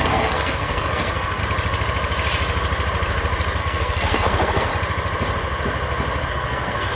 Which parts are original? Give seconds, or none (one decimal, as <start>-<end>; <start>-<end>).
1.4-3.6; 4.7-6.3